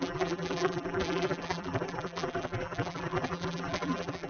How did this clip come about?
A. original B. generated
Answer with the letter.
B